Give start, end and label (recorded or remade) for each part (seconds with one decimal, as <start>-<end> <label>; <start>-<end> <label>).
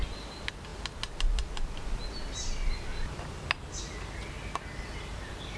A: 0.0-5.6 recorded